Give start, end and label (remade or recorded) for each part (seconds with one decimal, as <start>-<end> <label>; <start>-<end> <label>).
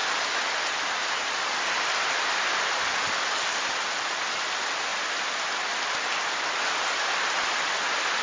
0.0-8.2 recorded